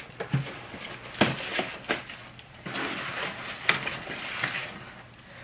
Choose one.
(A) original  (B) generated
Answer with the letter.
A